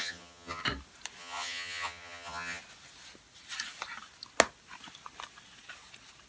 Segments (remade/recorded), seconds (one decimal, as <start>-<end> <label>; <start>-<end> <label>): 0.0-0.6 remade; 0.6-1.2 recorded; 1.2-2.6 remade; 2.6-6.3 recorded